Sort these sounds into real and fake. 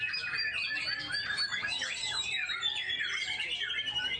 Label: real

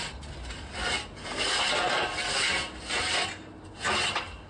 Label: real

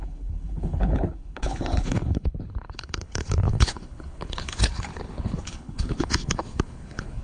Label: fake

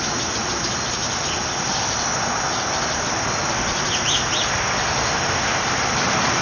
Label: real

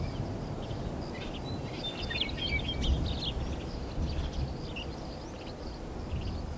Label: real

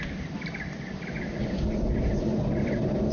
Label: real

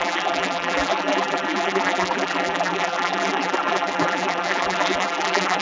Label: fake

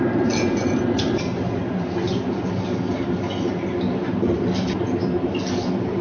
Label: real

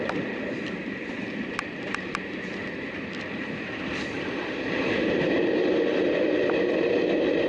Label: real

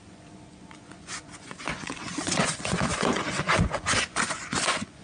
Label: fake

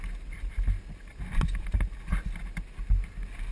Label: real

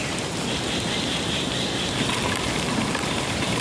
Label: fake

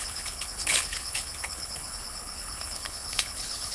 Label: fake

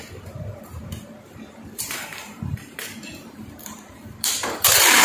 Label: fake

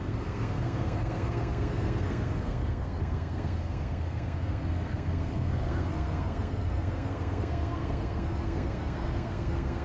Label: fake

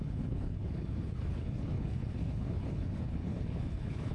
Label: fake